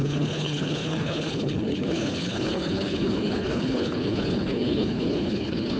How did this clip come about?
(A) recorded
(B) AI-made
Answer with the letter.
B